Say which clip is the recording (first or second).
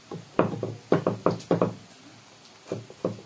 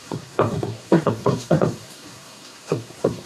first